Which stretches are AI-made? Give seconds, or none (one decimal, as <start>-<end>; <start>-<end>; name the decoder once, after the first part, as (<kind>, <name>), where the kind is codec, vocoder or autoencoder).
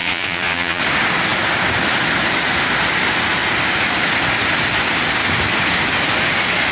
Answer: 0.0-0.8 (vocoder, Vocos)